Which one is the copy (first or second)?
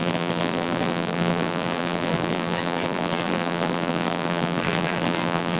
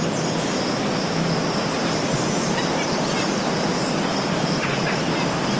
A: first